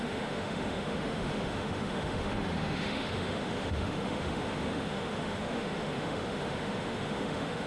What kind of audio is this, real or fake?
fake